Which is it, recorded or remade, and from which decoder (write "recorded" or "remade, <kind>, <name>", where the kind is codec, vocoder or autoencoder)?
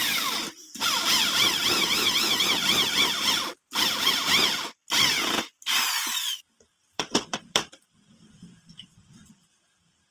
remade, vocoder, BigVGAN v2